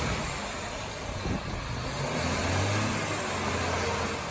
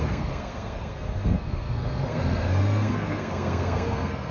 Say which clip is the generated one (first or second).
second